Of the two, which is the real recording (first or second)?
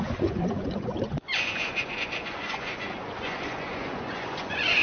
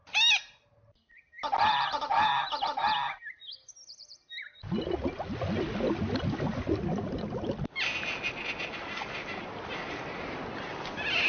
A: second